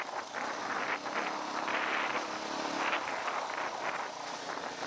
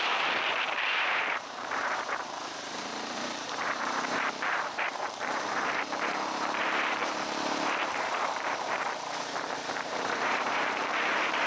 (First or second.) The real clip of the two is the first